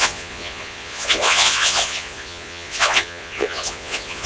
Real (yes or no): no